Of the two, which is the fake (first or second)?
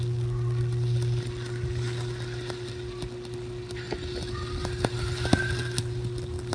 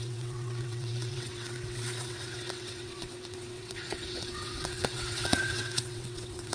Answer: second